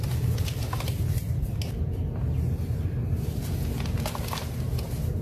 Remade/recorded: recorded